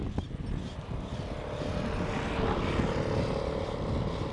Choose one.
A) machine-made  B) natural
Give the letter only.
B